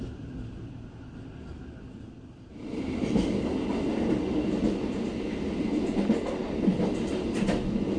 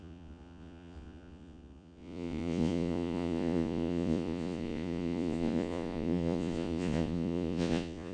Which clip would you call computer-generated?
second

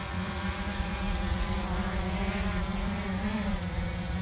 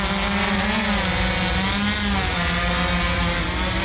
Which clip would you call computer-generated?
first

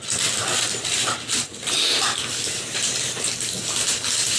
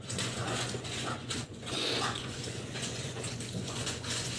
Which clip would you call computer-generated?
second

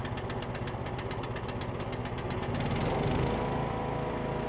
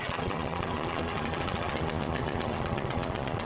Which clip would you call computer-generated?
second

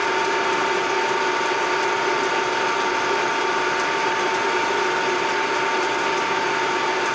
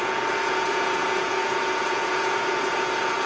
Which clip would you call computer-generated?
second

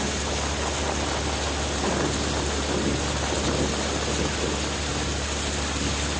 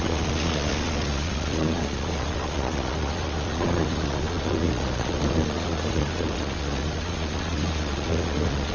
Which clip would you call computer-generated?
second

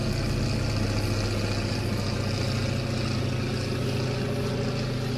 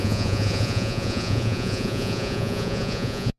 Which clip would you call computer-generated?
second